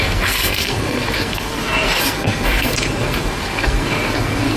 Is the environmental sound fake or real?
fake